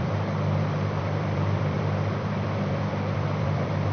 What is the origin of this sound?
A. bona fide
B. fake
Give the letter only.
B